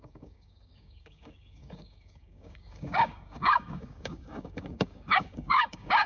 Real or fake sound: fake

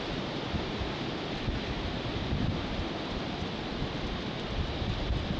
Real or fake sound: fake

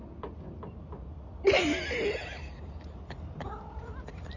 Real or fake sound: real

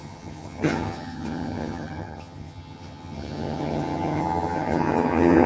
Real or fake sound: fake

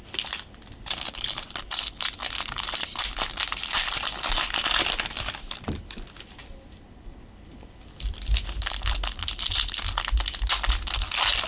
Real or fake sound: real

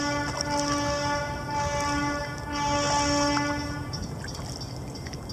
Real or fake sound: real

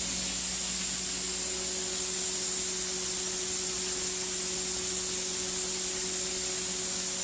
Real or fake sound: real